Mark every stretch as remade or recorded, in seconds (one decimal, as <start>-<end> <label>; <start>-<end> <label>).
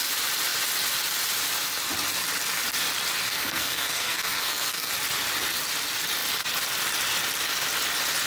0.0-3.3 recorded; 3.3-4.9 remade; 4.9-8.3 recorded